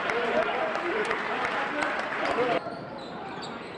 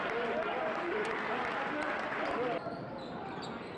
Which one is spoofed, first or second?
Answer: first